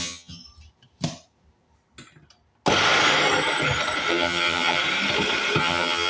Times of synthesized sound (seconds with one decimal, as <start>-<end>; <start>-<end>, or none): 0.0-0.4; 4.1-4.8; 5.6-6.1